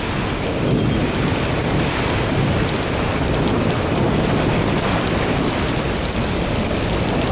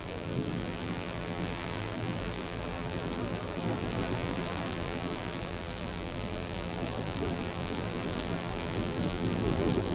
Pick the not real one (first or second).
second